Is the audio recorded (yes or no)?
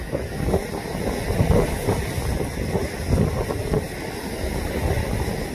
yes